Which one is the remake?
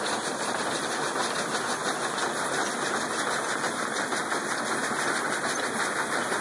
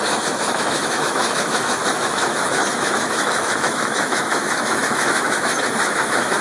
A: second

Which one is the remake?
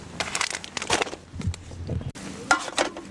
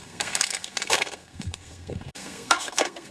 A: second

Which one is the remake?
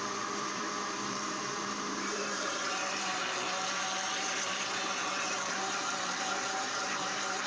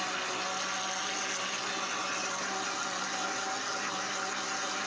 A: first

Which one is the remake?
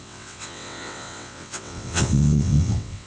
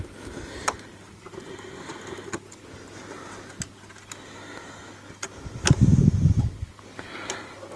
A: first